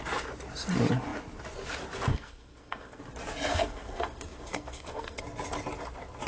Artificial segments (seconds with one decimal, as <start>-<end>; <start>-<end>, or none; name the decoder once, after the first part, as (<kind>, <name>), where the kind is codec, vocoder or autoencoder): 2.1-3.0 (codec, SNAC); 3.5-5.2